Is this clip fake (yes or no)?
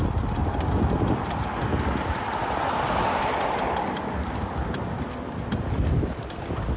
no